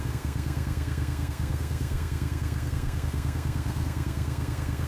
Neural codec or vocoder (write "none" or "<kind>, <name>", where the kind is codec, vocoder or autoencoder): codec, SNAC